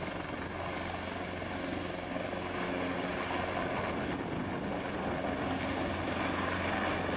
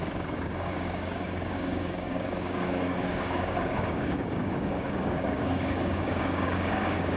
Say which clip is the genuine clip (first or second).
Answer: first